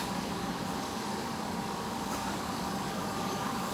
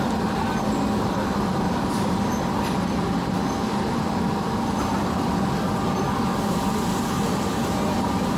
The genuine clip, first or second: second